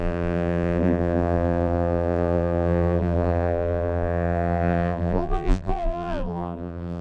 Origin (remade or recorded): remade